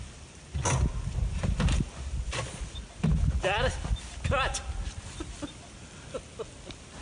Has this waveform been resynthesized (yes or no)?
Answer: no